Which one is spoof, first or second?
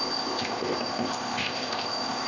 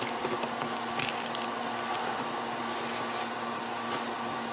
first